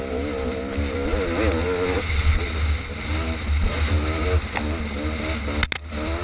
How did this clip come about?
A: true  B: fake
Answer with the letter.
A